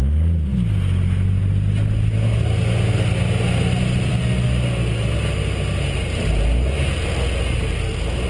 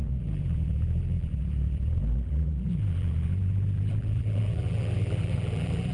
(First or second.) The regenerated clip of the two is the second